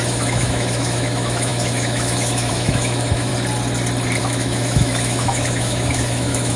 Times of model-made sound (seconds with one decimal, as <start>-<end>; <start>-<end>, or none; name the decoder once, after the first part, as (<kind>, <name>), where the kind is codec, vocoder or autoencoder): 0.0-3.3 (autoencoder, DAC-VAE); 4.2-6.6